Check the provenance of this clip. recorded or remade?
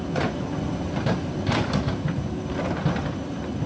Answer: recorded